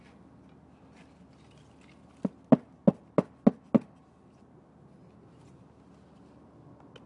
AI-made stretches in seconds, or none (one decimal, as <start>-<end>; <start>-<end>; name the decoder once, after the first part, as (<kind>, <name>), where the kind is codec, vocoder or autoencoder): none